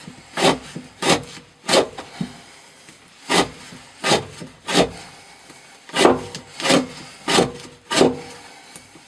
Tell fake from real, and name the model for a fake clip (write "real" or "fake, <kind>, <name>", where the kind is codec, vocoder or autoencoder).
real